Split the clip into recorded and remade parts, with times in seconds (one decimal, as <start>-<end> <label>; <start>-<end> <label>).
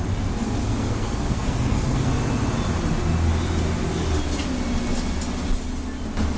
0.0-0.6 recorded; 0.6-2.1 remade; 2.1-6.4 recorded